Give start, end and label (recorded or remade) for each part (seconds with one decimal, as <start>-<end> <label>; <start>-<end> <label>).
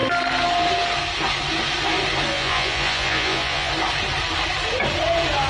0.0-2.3 recorded; 2.3-3.7 remade; 3.7-5.5 recorded